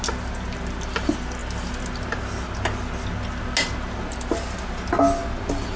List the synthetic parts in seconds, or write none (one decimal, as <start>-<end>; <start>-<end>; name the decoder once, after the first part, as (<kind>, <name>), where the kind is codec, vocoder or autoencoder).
none